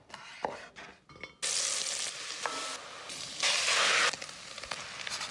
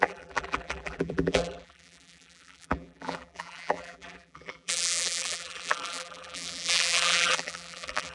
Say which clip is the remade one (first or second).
second